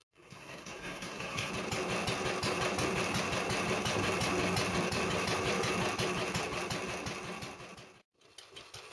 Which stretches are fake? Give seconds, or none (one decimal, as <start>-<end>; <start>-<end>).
0.0-1.5